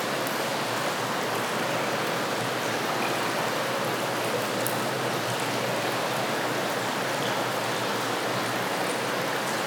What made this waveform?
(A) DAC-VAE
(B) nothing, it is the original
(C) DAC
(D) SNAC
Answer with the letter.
B